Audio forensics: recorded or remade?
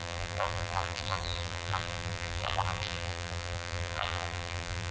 remade